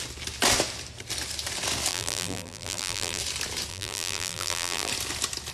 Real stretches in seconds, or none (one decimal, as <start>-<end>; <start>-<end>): 0.0-1.9; 3.2-3.7; 4.9-5.5